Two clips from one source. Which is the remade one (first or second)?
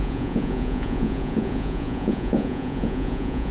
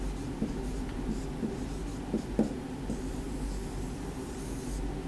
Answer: first